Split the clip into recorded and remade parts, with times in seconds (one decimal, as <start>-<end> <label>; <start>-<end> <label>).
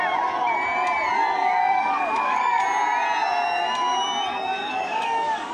0.0-1.4 recorded; 1.4-2.6 remade; 2.6-4.6 recorded; 4.6-5.5 remade